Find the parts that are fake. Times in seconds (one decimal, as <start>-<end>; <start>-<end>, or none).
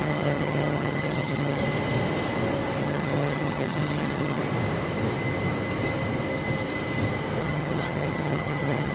0.0-1.6; 2.8-4.4; 7.4-8.9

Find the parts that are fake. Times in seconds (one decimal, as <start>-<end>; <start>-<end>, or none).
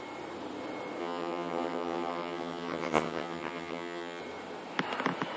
1.0-4.2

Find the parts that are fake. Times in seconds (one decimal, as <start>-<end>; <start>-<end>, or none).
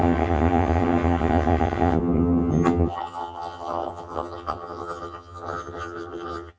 0.0-6.6